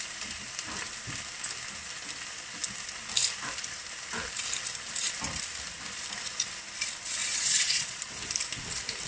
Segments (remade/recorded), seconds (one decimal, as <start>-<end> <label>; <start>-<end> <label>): 0.0-7.2 recorded; 7.2-8.0 remade; 8.0-9.1 recorded